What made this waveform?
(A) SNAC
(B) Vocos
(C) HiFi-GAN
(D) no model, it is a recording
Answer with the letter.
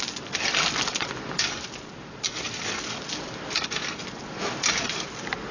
D